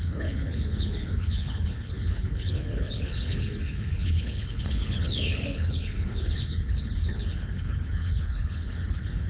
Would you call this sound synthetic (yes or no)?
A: yes